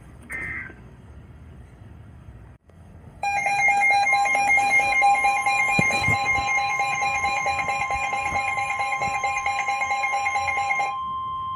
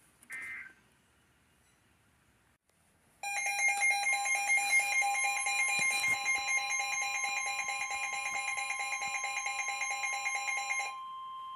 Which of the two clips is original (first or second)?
second